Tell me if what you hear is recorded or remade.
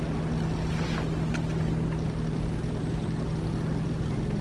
recorded